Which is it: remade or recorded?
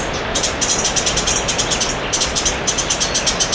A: remade